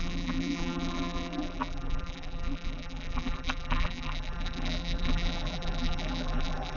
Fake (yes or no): yes